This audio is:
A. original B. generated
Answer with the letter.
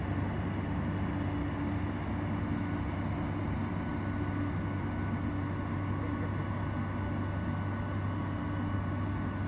A